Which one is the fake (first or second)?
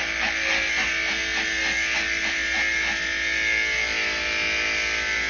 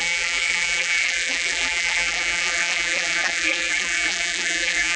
second